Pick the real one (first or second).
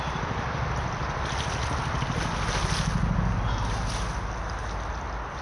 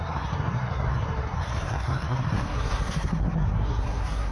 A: first